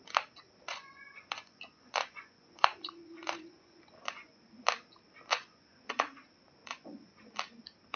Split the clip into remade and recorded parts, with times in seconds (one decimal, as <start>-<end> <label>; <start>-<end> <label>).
0.0-0.7 recorded; 0.7-4.4 remade; 4.4-5.3 recorded; 5.3-6.0 remade; 6.0-6.6 recorded; 6.6-7.2 remade; 7.2-8.0 recorded

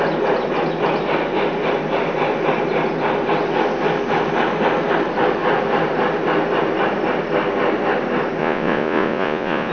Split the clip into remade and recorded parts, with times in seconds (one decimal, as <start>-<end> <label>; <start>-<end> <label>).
0.0-8.4 recorded; 8.4-9.7 remade

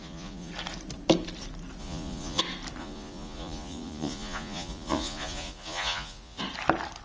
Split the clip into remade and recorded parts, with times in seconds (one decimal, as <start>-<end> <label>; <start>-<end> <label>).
0.0-0.5 remade; 0.5-1.8 recorded; 1.8-2.4 remade; 2.4-2.8 recorded; 2.8-6.4 remade; 6.4-7.0 recorded

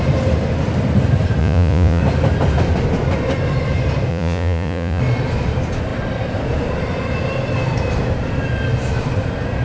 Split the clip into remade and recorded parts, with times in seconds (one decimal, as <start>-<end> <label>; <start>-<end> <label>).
0.0-1.4 recorded; 1.4-2.0 remade; 2.0-4.1 recorded; 4.1-5.0 remade; 5.0-9.6 recorded